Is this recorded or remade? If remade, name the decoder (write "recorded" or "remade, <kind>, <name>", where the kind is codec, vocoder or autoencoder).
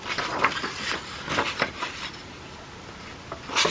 recorded